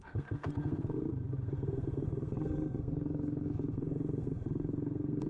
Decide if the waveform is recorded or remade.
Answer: remade